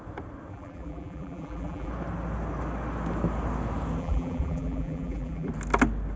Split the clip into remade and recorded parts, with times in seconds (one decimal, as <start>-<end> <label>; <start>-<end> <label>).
0.0-0.5 recorded; 0.5-1.9 remade; 1.9-4.0 recorded; 4.0-5.5 remade; 5.5-6.2 recorded